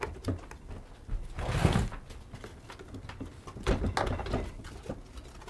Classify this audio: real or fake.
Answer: real